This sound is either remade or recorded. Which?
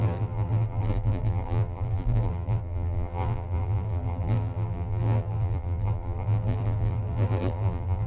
remade